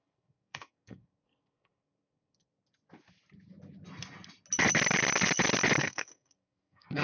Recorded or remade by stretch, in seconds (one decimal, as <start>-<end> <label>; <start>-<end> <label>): 0.0-2.5 remade; 2.5-5.8 recorded; 5.8-7.0 remade

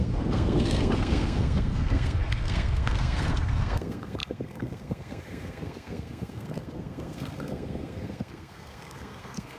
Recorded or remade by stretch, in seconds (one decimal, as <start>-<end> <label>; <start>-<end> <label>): 0.0-9.6 remade

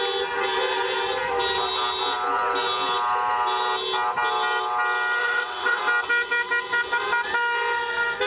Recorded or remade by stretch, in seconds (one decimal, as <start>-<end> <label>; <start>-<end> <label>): 0.0-5.2 recorded; 5.2-5.8 remade; 5.8-8.3 recorded

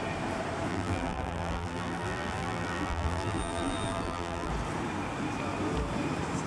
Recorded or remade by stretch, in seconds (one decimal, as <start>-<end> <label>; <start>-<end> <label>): 0.0-0.7 recorded; 0.7-4.5 remade; 4.5-6.5 recorded

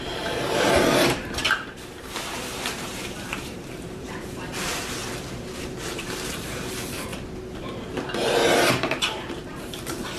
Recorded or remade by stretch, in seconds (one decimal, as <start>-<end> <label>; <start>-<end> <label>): 0.0-5.0 remade; 5.0-6.0 recorded; 6.0-7.1 remade; 7.1-8.7 recorded; 8.7-10.2 remade

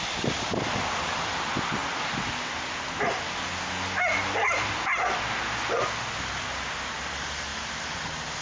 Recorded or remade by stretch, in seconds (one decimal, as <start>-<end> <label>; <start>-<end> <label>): 0.0-8.4 recorded

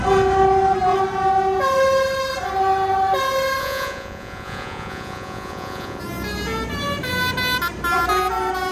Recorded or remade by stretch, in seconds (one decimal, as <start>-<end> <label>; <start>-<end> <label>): 0.0-3.6 recorded; 3.6-6.0 remade; 6.0-8.7 recorded